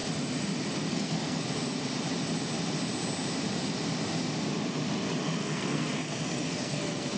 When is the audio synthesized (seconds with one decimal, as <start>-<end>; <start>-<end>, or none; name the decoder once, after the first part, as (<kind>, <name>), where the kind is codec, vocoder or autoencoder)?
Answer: 0.9-1.4 (codec, SNAC); 5.2-7.2